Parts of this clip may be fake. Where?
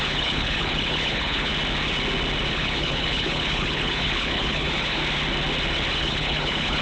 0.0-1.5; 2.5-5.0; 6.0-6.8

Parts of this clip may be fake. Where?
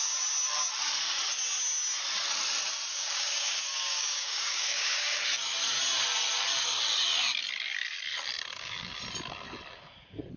2.9-5.2; 8.5-9.0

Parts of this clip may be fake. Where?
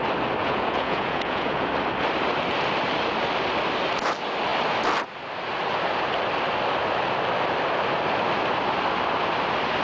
0.4-1.7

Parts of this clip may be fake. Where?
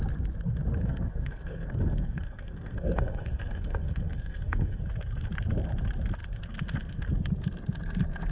0.8-4.8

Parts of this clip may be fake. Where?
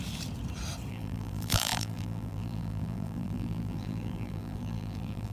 0.9-5.3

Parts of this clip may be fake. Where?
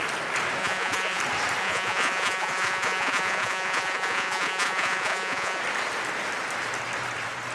0.6-1.2; 1.6-5.6